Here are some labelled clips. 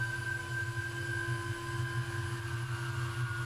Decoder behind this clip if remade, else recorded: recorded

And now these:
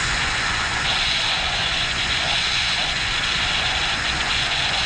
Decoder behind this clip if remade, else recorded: remade, vocoder, Vocos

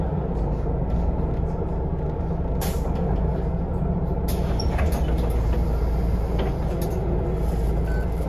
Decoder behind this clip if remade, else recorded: recorded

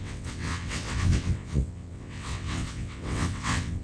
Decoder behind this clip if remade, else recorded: remade, vocoder, WaveNeXt